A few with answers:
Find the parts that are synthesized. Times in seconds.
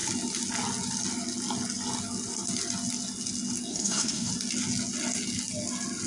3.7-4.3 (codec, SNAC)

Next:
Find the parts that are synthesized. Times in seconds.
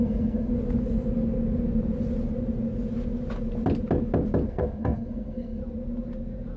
0.0-0.5 (codec, SNAC); 4.5-5.6